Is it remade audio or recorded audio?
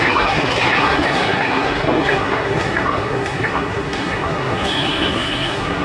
remade